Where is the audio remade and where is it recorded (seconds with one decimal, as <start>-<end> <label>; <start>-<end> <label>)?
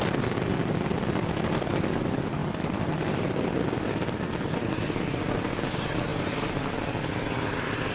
0.0-6.1 recorded; 6.1-6.6 remade; 6.6-7.9 recorded